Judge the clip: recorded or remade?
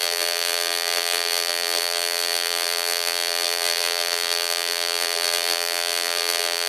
remade